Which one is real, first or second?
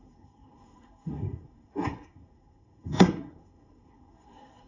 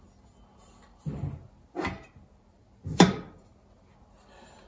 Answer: second